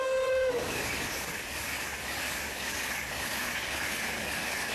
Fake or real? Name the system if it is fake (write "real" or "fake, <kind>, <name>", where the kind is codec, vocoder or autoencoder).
fake, codec, DAC